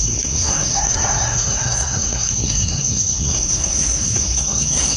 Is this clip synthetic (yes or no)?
yes